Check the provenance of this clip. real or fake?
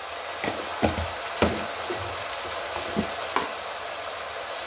real